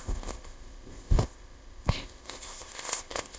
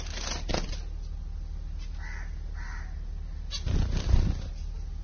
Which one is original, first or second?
second